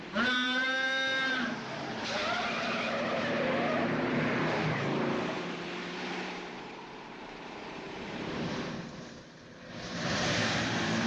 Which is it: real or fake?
fake